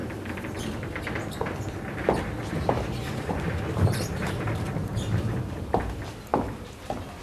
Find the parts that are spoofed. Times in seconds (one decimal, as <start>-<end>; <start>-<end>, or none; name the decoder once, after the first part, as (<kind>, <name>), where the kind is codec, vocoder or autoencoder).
0.0-4.8 (vocoder, BigVGAN v2); 5.8-7.2